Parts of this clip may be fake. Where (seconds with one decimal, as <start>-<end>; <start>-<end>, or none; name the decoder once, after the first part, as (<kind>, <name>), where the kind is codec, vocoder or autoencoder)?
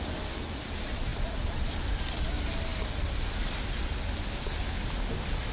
none